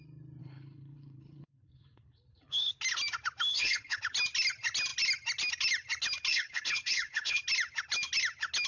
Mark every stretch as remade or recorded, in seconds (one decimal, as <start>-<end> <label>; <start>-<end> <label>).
0.0-0.4 recorded; 0.4-2.7 remade; 2.7-3.5 recorded; 3.5-4.0 remade; 4.0-6.3 recorded; 6.3-7.4 remade; 7.4-8.7 recorded